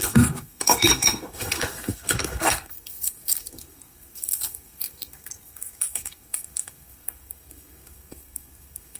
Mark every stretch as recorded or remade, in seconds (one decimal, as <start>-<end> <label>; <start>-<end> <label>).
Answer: 0.0-9.0 remade